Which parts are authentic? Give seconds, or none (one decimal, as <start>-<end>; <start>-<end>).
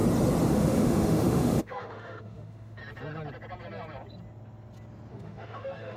0.0-0.5; 2.8-5.1